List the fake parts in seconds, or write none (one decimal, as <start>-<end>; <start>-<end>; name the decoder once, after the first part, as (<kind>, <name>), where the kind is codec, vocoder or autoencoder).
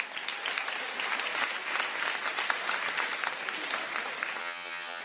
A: 4.4-5.0 (vocoder, HiFi-GAN)